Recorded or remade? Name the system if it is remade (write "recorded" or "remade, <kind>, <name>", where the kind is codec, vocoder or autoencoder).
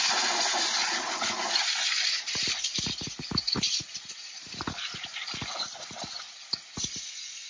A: recorded